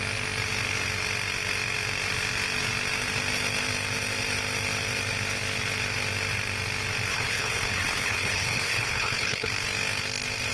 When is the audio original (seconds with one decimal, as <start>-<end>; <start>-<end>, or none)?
0.0-7.1; 9.5-10.5